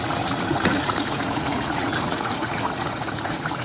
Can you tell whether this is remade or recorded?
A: remade